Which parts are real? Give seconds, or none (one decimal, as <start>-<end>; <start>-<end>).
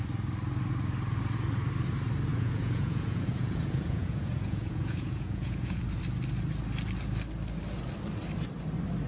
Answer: 0.0-2.3; 5.8-9.1